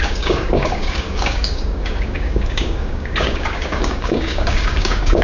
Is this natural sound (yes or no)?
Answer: no